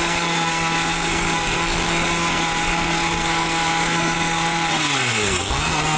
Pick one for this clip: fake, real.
fake